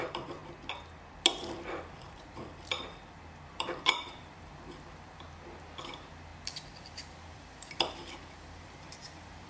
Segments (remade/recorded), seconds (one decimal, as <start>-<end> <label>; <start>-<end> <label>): 0.0-0.4 remade; 0.4-1.4 recorded; 1.4-9.5 remade